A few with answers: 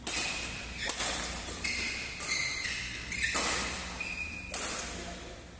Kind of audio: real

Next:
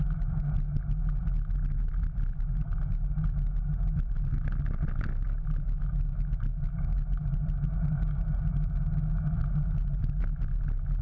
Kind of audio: real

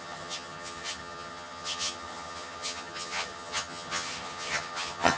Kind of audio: fake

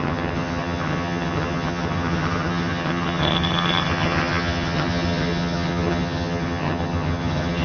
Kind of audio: fake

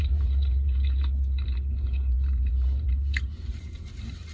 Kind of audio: fake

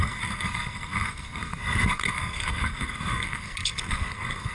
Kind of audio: fake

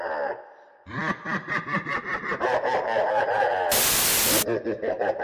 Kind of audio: real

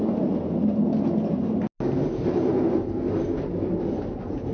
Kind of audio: real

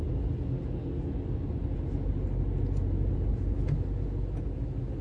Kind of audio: real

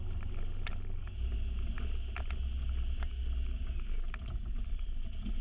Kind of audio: real